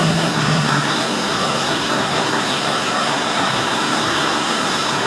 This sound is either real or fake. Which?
fake